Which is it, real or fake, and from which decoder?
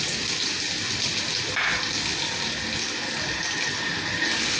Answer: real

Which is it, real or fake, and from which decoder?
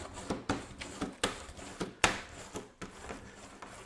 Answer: real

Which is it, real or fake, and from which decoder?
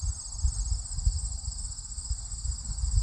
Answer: real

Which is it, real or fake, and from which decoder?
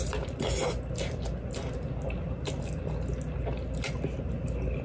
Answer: real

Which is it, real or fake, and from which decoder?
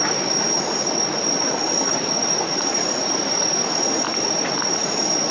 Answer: real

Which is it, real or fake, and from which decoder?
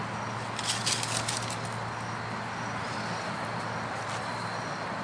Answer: real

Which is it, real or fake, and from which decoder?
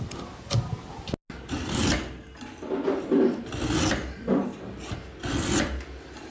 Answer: real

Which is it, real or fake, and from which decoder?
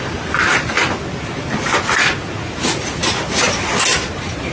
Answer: real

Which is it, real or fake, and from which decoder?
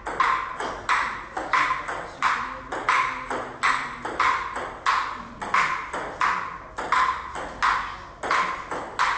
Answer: real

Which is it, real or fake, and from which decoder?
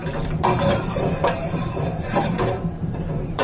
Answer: fake, vocoder, BigVGAN v2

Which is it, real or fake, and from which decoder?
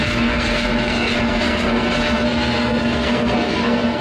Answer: fake, codec, SNAC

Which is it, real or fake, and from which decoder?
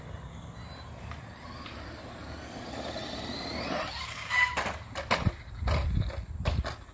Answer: real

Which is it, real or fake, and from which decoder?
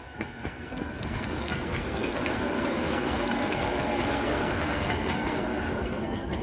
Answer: fake, codec, SNAC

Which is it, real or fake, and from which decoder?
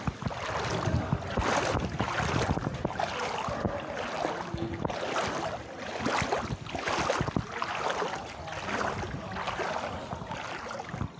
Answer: real